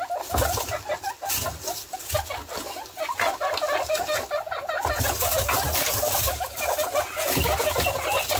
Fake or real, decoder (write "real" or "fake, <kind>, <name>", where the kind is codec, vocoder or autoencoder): real